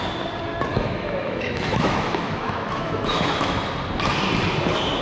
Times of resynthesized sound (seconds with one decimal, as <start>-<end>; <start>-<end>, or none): 0.7-3.6